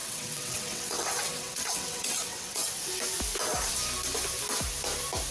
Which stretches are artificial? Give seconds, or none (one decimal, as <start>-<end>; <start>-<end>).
0.0-2.6